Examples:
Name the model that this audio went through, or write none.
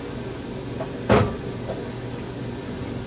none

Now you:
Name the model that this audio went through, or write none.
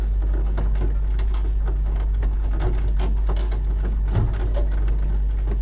none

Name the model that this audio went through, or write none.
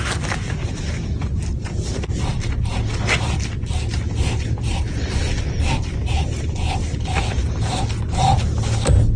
none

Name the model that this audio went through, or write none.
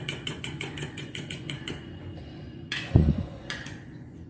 vocoder, Vocos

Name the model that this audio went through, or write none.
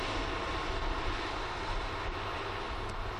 none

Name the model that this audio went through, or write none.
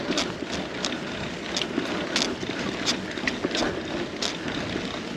none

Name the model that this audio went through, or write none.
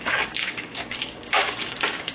codec, DAC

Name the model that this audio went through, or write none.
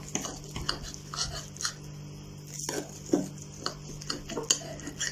none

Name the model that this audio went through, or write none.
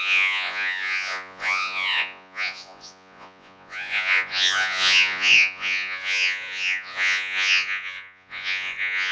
vocoder, Vocos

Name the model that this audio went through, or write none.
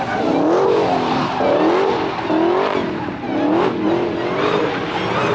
none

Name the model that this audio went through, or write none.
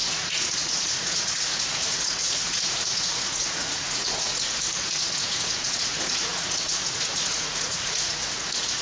vocoder, Vocos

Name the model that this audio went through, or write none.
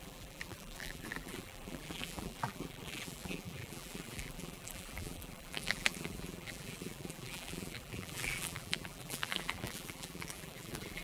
vocoder, BigVGAN v2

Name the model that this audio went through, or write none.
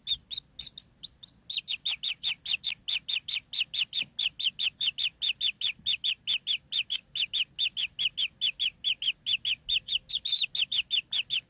none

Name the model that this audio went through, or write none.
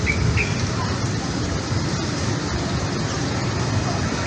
none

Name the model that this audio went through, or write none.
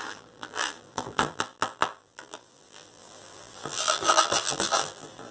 vocoder, BigVGAN v2